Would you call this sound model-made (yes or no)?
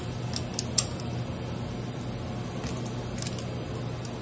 no